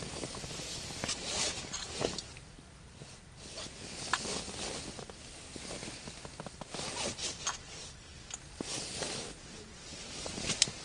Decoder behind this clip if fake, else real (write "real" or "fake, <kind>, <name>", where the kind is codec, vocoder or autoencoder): real